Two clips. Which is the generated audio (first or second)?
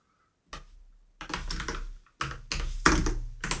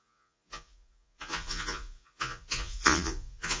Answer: second